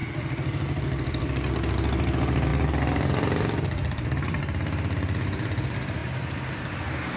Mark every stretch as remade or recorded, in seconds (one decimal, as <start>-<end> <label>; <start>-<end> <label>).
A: 0.0-1.5 remade; 1.5-2.5 recorded; 2.5-4.4 remade; 4.4-7.2 recorded